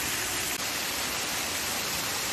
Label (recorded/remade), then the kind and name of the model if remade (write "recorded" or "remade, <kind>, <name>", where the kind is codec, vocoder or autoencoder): recorded